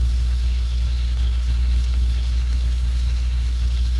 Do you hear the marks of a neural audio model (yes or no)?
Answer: yes